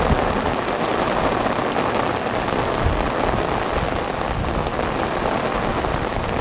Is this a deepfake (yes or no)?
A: no